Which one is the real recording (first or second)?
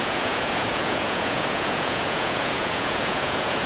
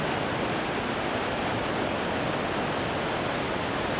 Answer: second